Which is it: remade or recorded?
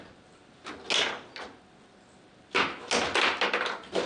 recorded